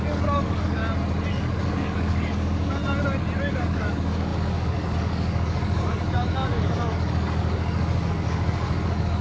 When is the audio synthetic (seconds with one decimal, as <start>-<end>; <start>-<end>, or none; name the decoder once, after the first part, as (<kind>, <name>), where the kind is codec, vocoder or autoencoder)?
0.0-0.8 (codec, DAC); 1.3-2.8; 3.5-9.2